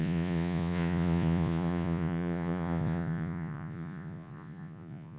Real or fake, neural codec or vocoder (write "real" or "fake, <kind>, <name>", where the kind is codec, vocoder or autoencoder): fake, vocoder, Vocos